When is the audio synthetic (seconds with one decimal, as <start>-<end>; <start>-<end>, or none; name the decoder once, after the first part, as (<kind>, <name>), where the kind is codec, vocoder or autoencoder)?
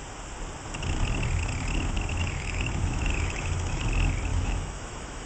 2.2-3.8 (autoencoder, DAC-VAE); 4.3-5.3